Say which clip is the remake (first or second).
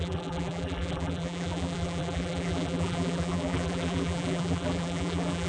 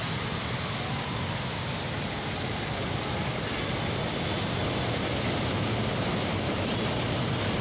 first